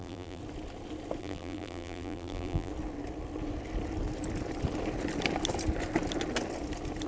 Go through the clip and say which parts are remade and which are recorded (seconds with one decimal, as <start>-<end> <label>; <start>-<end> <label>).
0.0-0.4 remade; 0.4-1.2 recorded; 1.2-2.7 remade; 2.7-7.1 recorded